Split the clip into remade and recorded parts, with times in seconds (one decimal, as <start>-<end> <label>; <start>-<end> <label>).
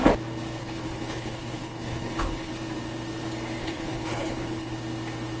0.0-0.6 recorded; 0.6-2.5 remade; 2.5-3.6 recorded; 3.6-4.7 remade; 4.7-5.4 recorded